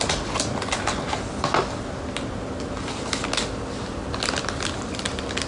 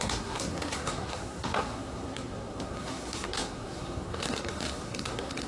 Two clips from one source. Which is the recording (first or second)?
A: first